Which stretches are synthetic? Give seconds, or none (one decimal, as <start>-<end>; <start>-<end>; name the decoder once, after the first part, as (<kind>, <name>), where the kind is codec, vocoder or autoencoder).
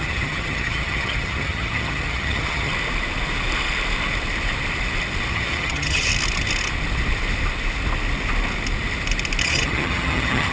0.0-2.7 (vocoder, HiFi-GAN); 5.3-6.1; 9.4-10.5